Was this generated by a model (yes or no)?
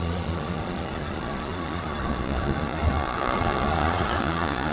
yes